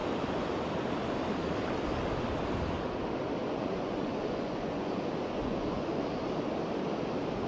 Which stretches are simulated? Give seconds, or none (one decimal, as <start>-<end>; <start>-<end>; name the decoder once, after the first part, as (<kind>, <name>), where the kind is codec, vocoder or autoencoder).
3.4-4.9 (vocoder, Vocos); 5.4-6.0